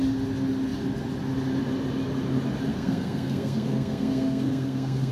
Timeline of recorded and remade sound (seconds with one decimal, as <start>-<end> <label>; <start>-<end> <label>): 0.0-2.7 recorded; 2.7-5.1 remade